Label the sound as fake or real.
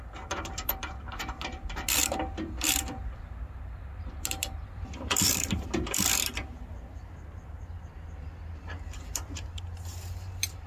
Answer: fake